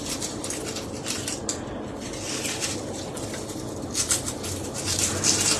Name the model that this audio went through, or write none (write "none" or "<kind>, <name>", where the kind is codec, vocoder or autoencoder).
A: vocoder, BigVGAN v2